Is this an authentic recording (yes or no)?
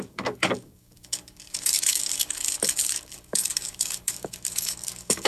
no